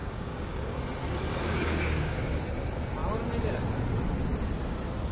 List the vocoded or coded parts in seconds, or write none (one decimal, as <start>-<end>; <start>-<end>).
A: 0.0-0.8; 1.5-2.4